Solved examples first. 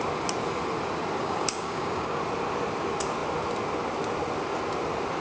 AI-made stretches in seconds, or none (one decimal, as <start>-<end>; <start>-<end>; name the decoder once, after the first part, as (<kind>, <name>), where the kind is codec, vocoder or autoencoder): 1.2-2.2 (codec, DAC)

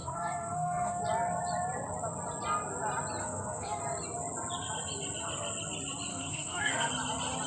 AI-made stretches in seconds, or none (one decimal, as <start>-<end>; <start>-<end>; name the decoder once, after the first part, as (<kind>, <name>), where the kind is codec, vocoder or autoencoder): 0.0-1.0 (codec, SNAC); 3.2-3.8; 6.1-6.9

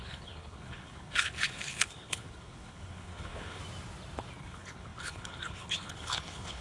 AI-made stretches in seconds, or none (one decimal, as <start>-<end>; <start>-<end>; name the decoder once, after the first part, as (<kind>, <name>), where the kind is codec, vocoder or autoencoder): 0.0-3.6 (codec, HILCodec); 4.4-6.6